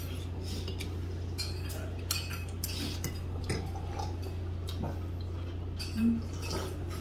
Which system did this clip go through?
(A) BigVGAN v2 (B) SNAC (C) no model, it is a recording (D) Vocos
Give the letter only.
C